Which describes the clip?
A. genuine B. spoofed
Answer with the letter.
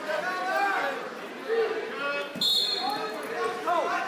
A